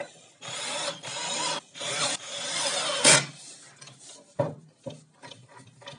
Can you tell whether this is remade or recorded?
recorded